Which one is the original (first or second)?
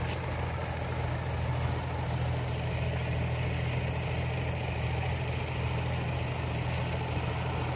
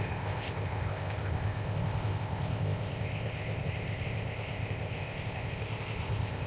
first